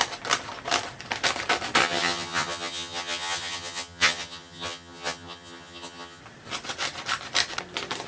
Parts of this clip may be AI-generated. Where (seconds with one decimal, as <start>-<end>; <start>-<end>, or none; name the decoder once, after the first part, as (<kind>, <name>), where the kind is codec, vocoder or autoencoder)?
1.8-6.2 (vocoder, HiFi-GAN)